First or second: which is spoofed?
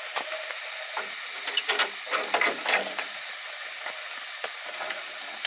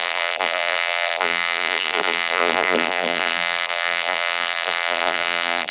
second